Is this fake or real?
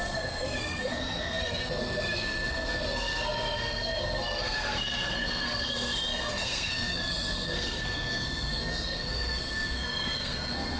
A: fake